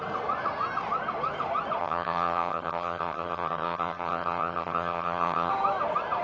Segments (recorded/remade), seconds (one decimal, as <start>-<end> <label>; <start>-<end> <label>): 0.0-1.8 recorded; 1.8-5.5 remade; 5.5-6.2 recorded